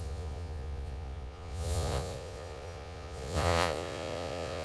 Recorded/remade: remade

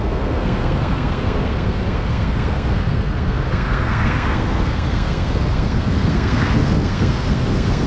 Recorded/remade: remade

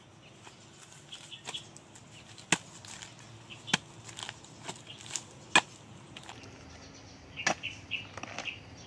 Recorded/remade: recorded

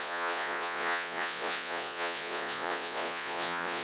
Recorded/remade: remade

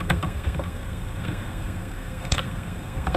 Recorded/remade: remade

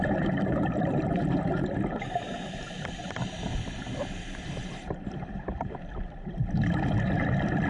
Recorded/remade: remade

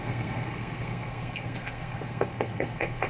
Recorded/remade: remade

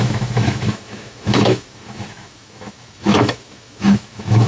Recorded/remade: remade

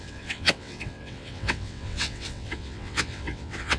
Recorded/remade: remade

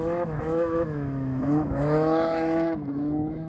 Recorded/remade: remade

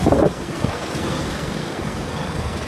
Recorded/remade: remade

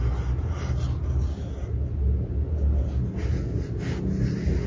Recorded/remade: recorded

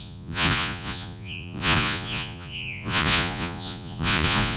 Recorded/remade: remade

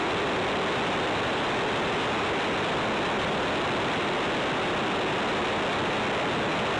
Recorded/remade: recorded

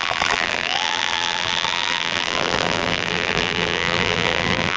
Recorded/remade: remade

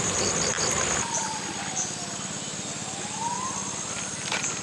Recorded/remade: recorded